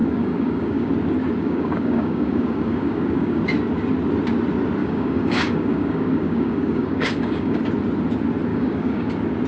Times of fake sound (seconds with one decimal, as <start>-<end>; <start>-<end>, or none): 0.0-0.9; 1.4-3.4; 4.8-7.6; 8.5-9.1